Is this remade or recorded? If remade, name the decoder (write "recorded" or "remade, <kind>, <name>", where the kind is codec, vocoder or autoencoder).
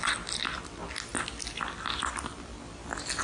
recorded